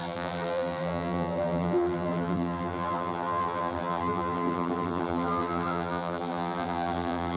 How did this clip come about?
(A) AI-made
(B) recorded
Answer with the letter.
A